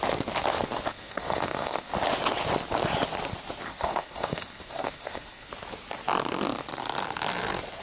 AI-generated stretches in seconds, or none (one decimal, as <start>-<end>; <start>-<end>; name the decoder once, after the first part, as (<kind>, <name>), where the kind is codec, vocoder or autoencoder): 0.9-1.9 (codec, SNAC); 3.7-5.5